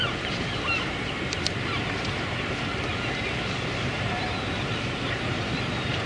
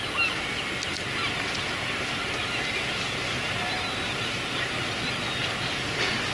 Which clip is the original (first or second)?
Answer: second